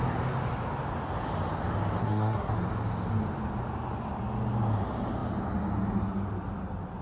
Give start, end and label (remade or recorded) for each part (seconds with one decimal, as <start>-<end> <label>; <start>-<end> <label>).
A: 0.0-2.0 recorded; 2.0-2.5 remade; 2.5-7.0 recorded